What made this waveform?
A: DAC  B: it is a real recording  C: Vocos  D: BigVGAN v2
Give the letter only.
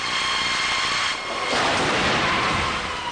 B